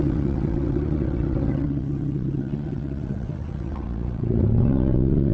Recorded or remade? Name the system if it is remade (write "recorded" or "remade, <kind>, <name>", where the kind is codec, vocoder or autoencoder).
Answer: remade, vocoder, WaveNeXt